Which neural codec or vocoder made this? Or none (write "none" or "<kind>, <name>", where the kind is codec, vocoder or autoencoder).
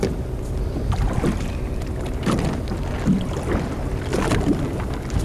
none